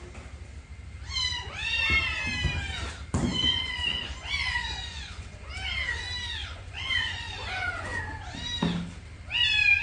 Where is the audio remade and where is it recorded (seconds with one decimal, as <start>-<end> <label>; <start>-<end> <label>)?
0.0-3.3 recorded; 3.3-5.5 remade; 5.5-6.4 recorded; 6.4-8.0 remade; 8.0-9.8 recorded